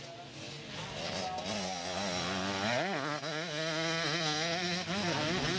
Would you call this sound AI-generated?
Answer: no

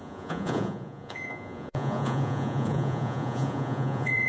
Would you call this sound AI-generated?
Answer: yes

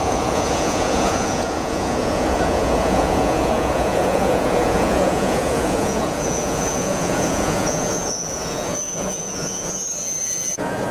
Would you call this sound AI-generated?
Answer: yes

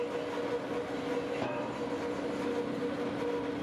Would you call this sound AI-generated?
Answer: no